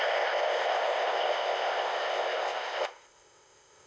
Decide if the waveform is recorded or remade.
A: remade